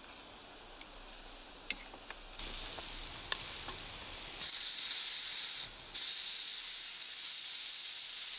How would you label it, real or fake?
real